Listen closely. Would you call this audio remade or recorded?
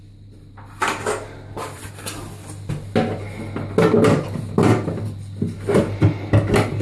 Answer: recorded